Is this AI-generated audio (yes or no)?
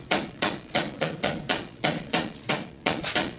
yes